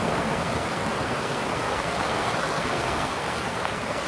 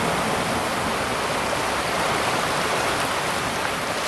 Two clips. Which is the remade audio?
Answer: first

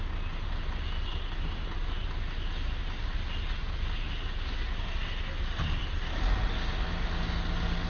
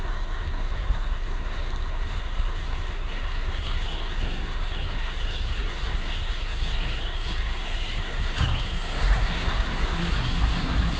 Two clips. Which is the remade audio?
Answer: second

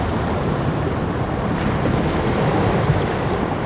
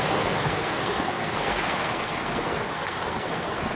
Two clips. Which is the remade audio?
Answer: second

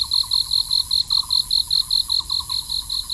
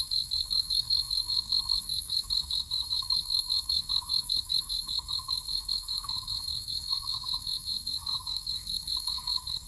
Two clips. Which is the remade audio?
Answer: second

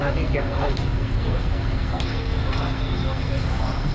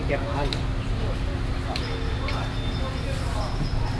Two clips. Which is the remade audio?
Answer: first